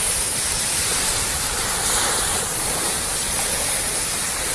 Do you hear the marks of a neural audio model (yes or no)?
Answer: yes